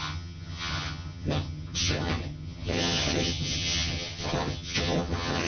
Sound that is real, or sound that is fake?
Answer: fake